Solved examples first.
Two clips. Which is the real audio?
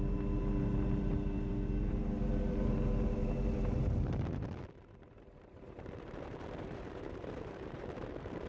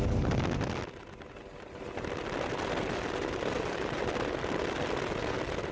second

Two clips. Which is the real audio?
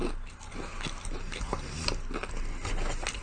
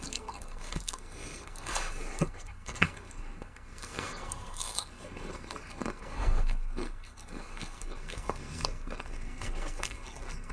first